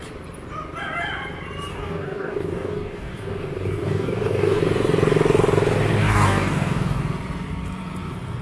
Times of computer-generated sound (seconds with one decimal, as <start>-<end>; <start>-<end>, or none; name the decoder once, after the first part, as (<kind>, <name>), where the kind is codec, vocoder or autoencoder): 1.7-4.6 (codec, DAC); 6.0-7.0